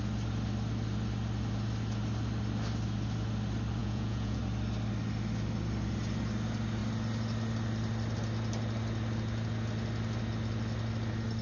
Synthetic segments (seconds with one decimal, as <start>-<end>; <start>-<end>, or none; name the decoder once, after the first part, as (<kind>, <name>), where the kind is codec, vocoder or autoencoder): 3.8-4.4 (vocoder, Vocos)